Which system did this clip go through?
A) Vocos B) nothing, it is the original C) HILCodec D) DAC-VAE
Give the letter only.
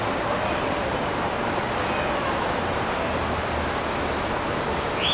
B